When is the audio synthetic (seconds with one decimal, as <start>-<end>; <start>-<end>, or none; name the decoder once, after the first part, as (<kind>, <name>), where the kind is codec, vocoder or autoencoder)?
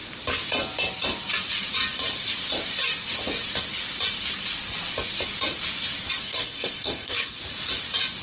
6.2-7.4 (codec, SNAC)